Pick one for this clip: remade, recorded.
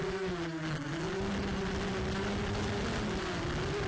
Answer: recorded